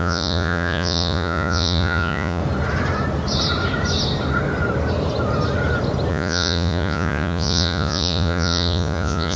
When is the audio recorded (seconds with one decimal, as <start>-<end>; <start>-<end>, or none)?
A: 2.4-6.1